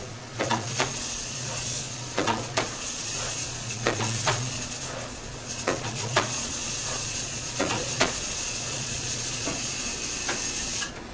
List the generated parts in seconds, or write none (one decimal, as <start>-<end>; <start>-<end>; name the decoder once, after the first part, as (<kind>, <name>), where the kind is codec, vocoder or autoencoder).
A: 0.0-9.9 (vocoder, Vocos); 10.6-11.1